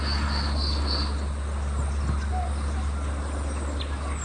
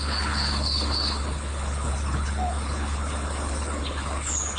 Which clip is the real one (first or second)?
first